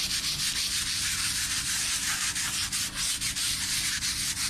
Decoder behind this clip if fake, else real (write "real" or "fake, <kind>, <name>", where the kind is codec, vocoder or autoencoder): real